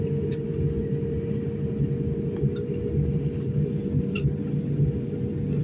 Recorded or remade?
recorded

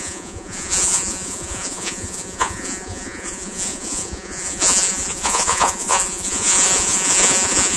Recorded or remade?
remade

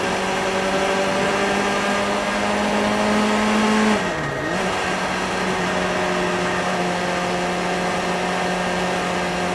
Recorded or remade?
recorded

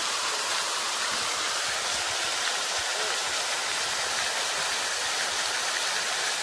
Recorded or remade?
recorded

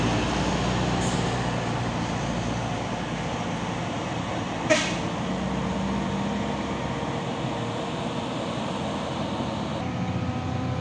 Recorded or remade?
recorded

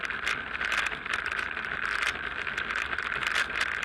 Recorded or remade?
recorded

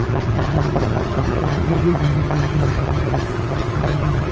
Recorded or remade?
remade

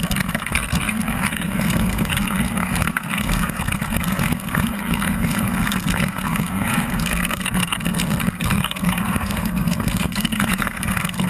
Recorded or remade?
remade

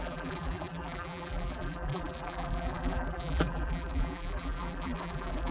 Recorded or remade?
remade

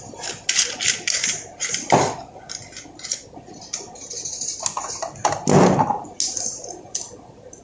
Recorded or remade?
recorded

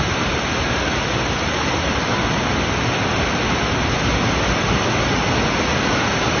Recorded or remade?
recorded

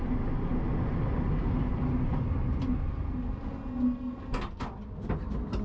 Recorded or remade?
recorded